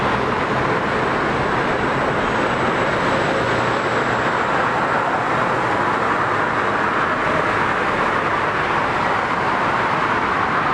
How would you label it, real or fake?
real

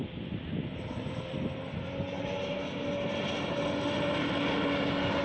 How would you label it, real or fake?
real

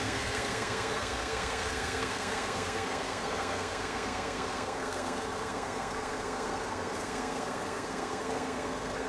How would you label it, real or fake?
fake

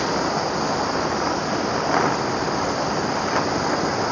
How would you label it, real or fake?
real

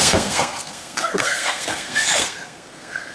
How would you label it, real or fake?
fake